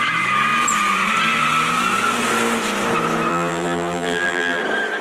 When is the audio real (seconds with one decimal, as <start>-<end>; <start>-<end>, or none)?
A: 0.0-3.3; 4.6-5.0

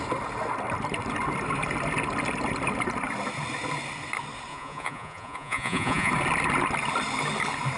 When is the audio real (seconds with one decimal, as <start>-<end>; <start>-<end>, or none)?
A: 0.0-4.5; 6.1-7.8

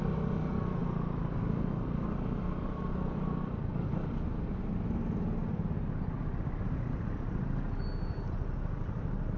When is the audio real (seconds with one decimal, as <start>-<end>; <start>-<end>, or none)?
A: 0.0-9.4

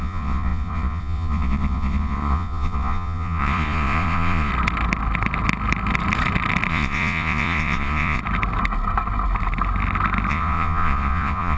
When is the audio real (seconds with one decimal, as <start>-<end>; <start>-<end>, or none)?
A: 4.5-6.7; 8.2-10.3